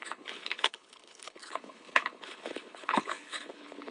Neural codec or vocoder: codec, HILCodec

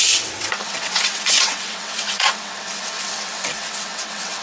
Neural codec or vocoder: vocoder, WaveNeXt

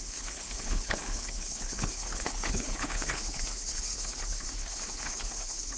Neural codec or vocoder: codec, HILCodec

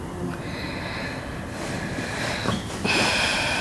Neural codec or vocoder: none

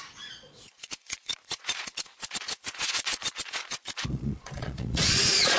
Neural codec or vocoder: vocoder, Vocos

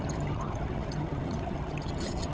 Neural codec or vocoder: vocoder, HiFi-GAN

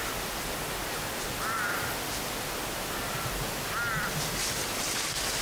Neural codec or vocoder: none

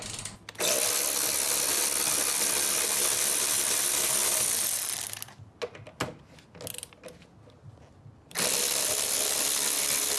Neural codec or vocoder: none